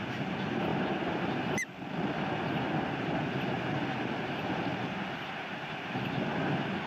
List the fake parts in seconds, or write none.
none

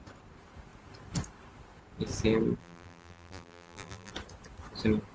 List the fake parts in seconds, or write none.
2.6-4.1 (vocoder, BigVGAN v2)

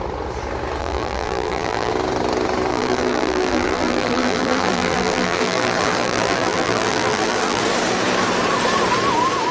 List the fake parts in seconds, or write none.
0.8-1.9 (vocoder, BigVGAN v2); 2.7-7.6

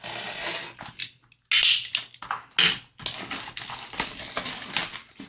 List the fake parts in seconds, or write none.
none

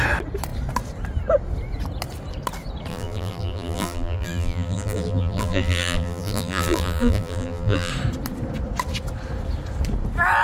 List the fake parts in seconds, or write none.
2.9-7.9 (vocoder, BigVGAN v2)

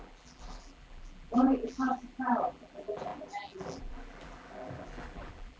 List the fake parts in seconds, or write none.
0.0-5.6 (vocoder, BigVGAN v2)

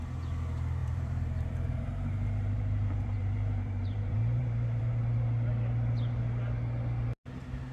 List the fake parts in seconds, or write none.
0.8-4.8 (vocoder, BigVGAN v2)